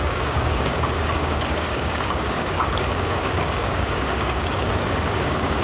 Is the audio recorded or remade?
remade